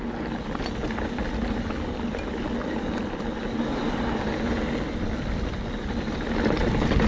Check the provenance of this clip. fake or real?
real